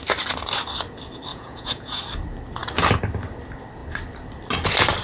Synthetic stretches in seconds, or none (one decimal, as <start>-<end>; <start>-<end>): 1.3-2.0